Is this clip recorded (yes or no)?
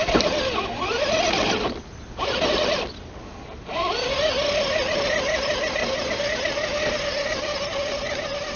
yes